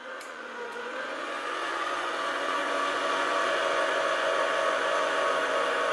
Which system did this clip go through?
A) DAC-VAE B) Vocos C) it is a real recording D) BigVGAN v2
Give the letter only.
B